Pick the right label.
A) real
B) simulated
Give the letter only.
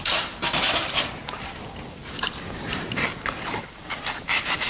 B